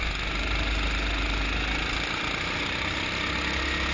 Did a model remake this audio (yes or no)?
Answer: no